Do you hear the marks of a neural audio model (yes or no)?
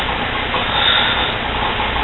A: no